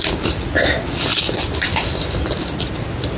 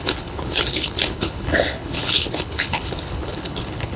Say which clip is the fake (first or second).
second